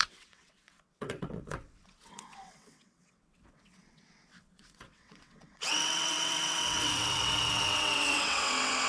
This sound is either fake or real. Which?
fake